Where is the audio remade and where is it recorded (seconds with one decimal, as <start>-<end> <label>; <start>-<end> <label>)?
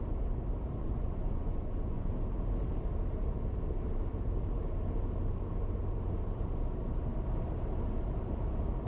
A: 0.0-0.8 recorded; 0.8-2.1 remade; 2.1-8.9 recorded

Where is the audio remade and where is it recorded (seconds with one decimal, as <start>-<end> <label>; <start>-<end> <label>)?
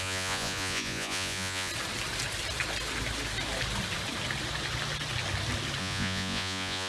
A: 0.0-1.7 remade; 1.7-5.8 recorded; 5.8-6.9 remade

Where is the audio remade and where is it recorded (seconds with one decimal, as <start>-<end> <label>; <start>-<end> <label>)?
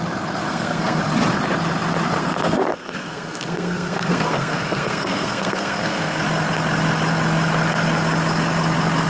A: 0.0-0.5 recorded; 0.5-1.0 remade; 1.0-2.2 recorded; 2.2-6.2 remade; 6.2-9.1 recorded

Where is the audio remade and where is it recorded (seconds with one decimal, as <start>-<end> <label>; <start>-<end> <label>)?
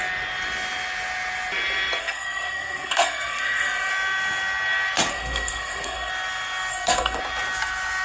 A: 0.0-2.0 recorded; 2.0-3.9 remade; 3.9-5.1 recorded; 5.1-6.1 remade; 6.1-6.7 recorded; 6.7-7.2 remade; 7.2-8.0 recorded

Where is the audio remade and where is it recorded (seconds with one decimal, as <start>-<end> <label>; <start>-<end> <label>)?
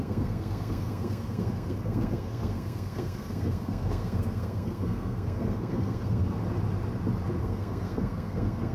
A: 0.0-6.4 remade; 6.4-7.4 recorded; 7.4-8.7 remade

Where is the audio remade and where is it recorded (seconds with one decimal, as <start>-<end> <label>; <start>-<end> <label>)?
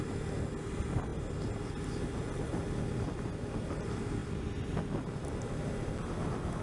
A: 0.0-6.6 recorded